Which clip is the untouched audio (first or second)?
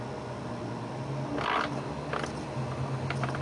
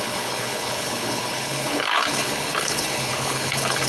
first